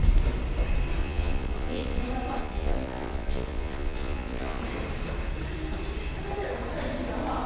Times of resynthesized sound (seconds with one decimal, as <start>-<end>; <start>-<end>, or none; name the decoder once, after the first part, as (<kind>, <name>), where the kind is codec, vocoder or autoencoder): 1.0-2.0 (vocoder, Vocos); 2.4-4.6